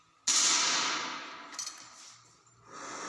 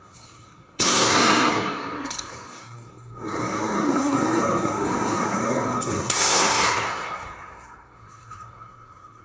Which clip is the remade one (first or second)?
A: second